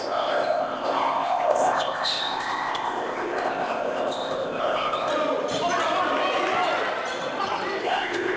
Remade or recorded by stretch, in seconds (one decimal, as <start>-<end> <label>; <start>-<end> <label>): 0.0-5.1 remade; 5.1-7.8 recorded; 7.8-8.4 remade